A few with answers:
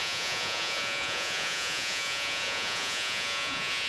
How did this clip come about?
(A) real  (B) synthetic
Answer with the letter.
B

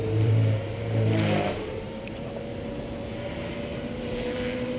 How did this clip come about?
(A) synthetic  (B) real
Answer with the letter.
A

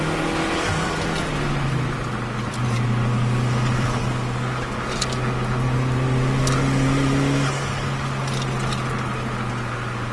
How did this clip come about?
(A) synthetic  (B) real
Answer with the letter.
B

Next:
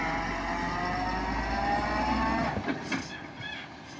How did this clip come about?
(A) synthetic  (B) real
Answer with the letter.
B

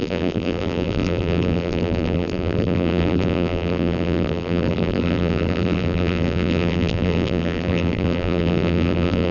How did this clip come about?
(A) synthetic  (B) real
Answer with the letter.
A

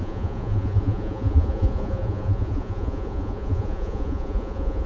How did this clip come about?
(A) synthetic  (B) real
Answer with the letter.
A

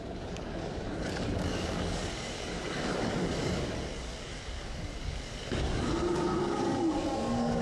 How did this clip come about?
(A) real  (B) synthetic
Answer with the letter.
B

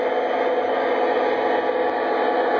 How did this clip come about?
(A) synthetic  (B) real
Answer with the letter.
B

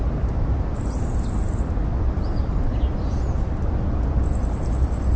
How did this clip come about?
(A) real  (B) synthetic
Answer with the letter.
A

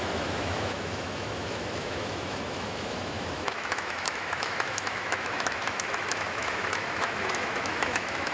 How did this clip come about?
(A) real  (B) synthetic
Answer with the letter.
B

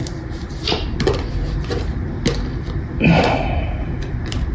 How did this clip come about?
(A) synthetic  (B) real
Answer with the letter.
A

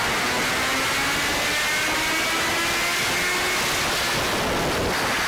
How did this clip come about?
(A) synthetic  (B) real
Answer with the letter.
B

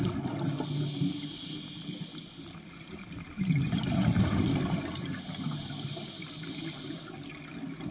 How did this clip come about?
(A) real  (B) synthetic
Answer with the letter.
A